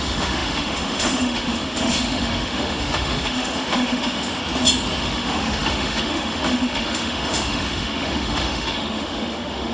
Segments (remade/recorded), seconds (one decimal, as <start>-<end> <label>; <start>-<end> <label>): 0.0-4.4 remade; 4.4-5.0 recorded; 5.0-9.7 remade